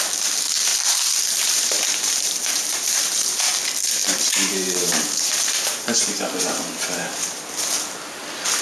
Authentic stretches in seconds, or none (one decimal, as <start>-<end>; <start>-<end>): 0.0-0.7; 3.0-4.0; 7.4-8.6